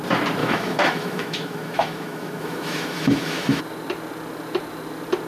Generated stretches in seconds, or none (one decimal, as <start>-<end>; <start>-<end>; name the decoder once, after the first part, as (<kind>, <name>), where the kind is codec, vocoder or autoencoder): 0.4-3.6 (autoencoder, DAC-VAE)